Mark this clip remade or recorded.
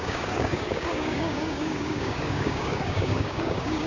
remade